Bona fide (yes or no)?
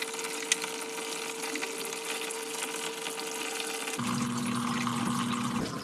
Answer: yes